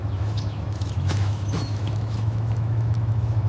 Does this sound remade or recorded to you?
remade